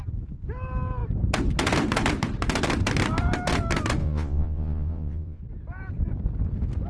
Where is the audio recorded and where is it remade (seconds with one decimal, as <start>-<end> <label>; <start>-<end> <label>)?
0.0-4.0 recorded; 4.0-5.4 remade; 5.4-6.9 recorded